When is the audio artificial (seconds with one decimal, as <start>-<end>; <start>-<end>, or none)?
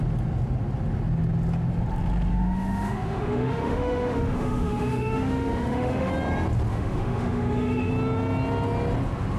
2.3-6.1; 6.7-7.9